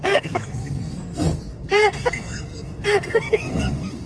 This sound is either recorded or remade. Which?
remade